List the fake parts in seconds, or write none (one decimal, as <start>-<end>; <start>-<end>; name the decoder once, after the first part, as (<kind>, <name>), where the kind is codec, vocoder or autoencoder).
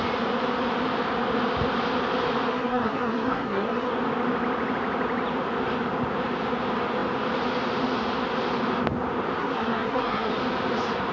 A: 2.5-3.9 (codec, SNAC); 9.4-10.3